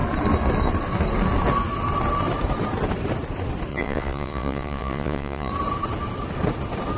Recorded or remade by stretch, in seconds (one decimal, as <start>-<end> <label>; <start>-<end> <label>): 0.0-3.7 recorded; 3.7-5.5 remade; 5.5-7.0 recorded